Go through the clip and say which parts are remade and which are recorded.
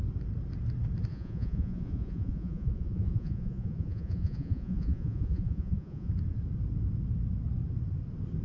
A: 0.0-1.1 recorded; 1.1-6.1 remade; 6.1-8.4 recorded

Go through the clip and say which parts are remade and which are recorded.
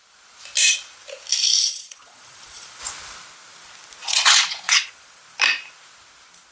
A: 0.0-1.7 recorded; 1.7-2.8 remade; 2.8-4.0 recorded; 4.0-5.2 remade; 5.2-6.5 recorded